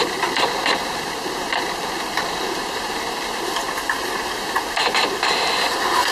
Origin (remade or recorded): remade